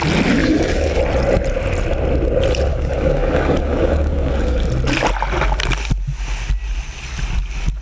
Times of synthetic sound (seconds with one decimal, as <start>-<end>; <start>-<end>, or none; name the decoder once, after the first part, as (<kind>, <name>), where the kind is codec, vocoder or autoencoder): 0.4-1.0 (codec, DAC); 2.7-4.7